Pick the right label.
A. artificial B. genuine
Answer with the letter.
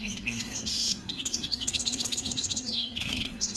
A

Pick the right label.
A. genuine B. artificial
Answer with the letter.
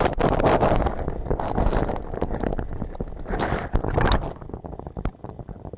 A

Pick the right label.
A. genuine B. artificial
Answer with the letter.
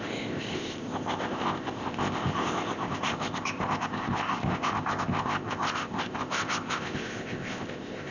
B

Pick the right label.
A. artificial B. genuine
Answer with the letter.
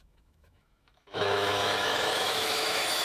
A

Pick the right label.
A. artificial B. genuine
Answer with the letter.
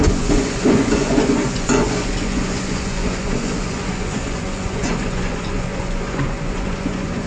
A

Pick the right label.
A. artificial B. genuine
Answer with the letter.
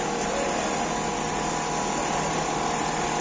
B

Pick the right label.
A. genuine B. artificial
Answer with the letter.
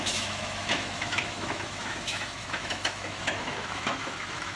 B